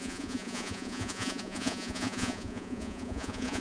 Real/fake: fake